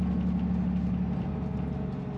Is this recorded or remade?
recorded